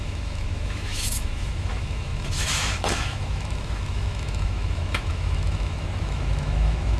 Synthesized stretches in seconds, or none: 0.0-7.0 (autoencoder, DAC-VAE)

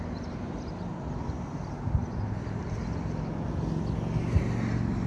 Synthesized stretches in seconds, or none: none

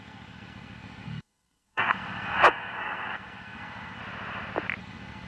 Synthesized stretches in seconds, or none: 0.0-4.0 (codec, SNAC); 4.8-5.3

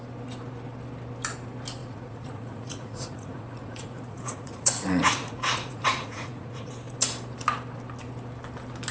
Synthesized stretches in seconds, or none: 1.8-6.7 (vocoder, Vocos)

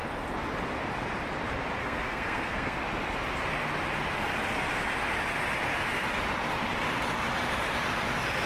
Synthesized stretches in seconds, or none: 1.8-2.8 (codec, SNAC)

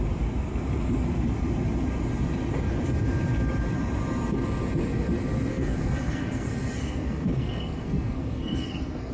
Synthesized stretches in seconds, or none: 5.5-9.1 (codec, SNAC)

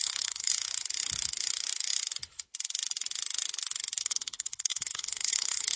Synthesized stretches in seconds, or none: 0.0-0.5 (codec, HILCodec); 4.0-5.8

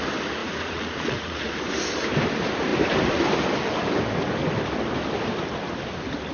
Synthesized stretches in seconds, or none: 0.4-1.5 (vocoder, Vocos)